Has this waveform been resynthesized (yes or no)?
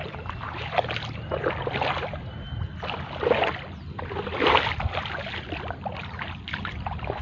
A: no